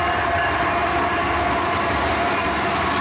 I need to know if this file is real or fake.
real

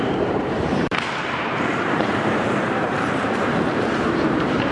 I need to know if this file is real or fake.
fake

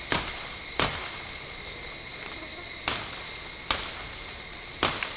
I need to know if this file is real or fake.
real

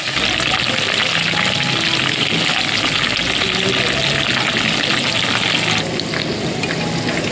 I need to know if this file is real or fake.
real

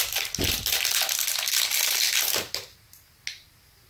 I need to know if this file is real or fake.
real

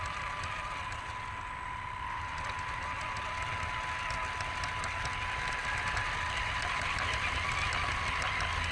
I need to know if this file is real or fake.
real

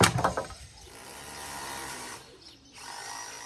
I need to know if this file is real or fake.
fake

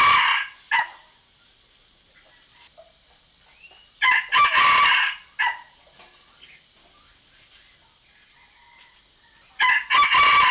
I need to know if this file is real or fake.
real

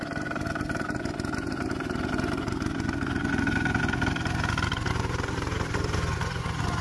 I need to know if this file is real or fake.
real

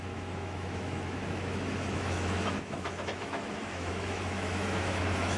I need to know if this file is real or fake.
fake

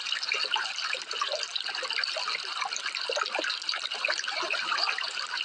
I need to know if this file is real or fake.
real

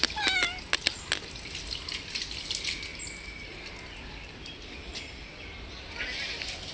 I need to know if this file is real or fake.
real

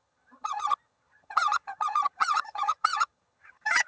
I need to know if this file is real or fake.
fake